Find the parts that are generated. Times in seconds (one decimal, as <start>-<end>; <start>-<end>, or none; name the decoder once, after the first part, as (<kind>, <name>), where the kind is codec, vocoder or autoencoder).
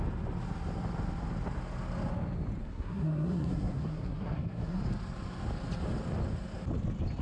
2.6-4.8 (codec, SNAC)